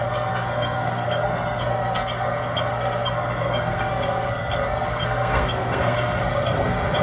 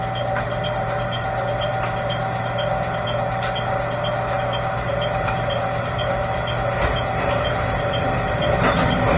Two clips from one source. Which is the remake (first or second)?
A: first